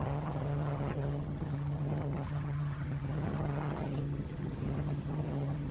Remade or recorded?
remade